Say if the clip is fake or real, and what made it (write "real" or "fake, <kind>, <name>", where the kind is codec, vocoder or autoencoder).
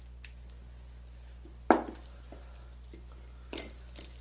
real